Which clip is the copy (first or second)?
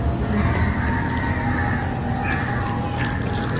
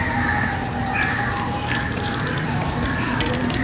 second